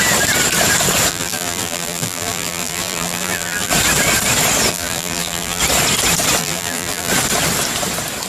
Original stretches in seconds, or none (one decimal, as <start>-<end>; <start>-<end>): 0.0-1.1; 3.7-4.7; 5.6-6.4; 7.1-8.3